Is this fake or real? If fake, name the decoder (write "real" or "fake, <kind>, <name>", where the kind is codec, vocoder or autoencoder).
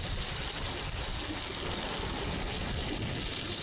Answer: real